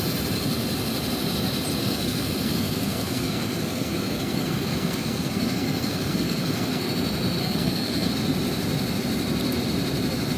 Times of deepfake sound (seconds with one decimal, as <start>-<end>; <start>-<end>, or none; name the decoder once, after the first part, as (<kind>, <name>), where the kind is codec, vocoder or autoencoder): 1.8-6.9 (codec, SNAC); 7.4-8.1